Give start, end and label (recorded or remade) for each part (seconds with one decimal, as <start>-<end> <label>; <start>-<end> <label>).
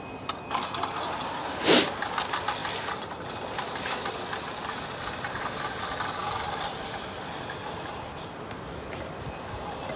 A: 0.0-2.6 recorded; 2.6-4.2 remade; 4.2-10.0 recorded